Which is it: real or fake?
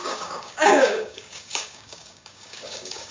fake